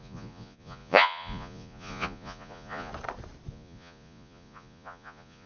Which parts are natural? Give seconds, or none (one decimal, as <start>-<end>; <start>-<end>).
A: 2.9-3.5